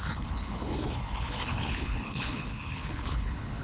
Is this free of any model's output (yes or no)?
no